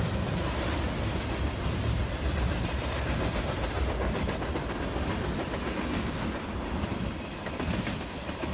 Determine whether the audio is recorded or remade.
recorded